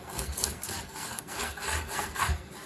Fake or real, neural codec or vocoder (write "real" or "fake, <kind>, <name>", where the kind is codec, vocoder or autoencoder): fake, codec, SNAC